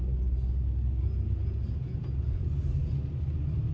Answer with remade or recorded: recorded